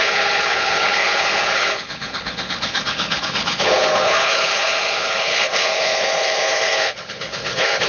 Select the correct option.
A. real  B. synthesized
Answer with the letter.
B